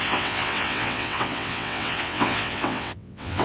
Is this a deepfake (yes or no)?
yes